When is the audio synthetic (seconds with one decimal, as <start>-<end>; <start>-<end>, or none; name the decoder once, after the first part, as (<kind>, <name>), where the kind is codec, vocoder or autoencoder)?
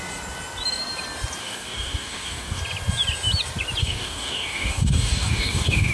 1.4-2.6 (codec, DAC); 3.8-5.9